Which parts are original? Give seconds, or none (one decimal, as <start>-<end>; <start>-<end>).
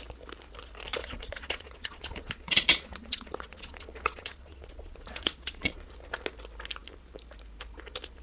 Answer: 0.0-1.0; 5.9-8.2